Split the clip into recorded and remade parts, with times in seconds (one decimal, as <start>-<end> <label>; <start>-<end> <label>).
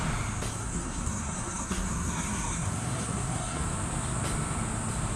0.0-0.5 recorded; 0.5-3.6 remade; 3.6-5.2 recorded